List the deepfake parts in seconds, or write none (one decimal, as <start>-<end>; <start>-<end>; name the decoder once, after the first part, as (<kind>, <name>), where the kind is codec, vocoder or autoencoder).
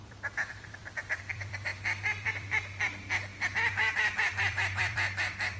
0.0-5.6 (vocoder, BigVGAN v2)